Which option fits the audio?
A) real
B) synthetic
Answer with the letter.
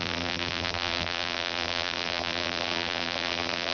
B